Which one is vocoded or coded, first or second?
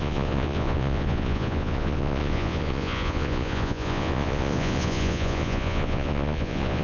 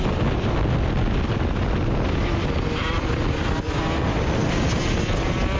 first